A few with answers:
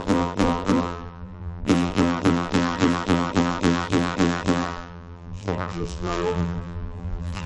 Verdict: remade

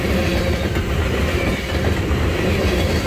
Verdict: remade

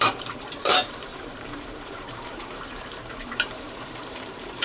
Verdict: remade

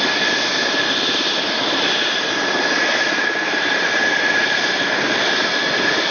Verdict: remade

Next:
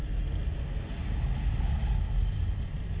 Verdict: recorded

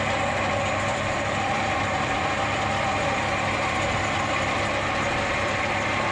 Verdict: remade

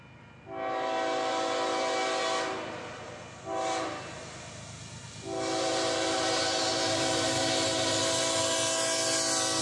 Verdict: recorded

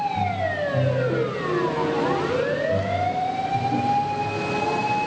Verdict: recorded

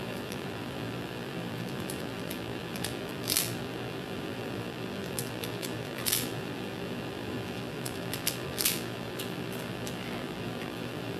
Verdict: remade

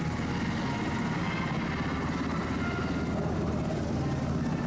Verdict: recorded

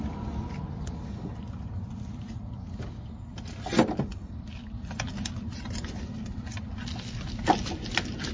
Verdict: recorded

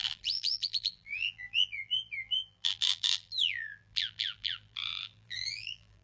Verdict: remade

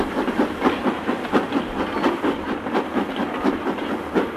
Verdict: recorded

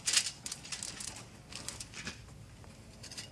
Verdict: recorded